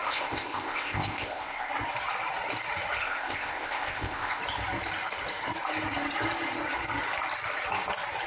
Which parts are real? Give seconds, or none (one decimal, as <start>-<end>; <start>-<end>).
1.7-3.0; 4.4-8.3